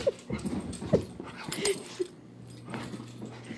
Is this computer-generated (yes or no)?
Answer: no